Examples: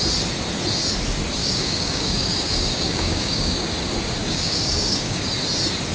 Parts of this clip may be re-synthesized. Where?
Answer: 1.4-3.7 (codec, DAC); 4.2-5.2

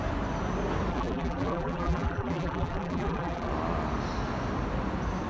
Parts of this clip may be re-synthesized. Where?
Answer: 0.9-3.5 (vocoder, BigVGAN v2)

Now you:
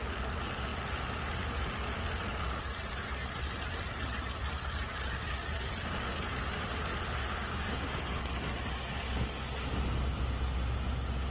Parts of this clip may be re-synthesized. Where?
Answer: 7.2-8.0 (codec, DAC)

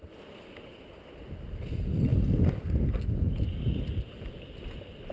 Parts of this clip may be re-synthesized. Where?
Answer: none